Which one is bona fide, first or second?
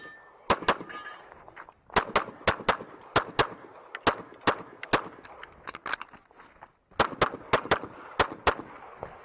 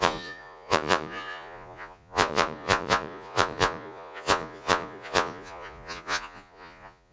first